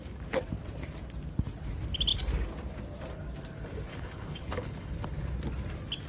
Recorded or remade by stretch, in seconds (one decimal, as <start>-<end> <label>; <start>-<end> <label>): 0.0-3.9 recorded; 3.9-5.0 remade; 5.0-6.1 recorded